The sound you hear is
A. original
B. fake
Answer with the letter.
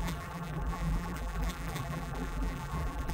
B